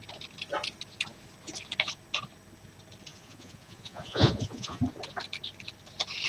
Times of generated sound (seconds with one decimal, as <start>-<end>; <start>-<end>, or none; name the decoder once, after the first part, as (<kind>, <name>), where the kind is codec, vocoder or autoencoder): 3.1-4.8 (vocoder, Vocos)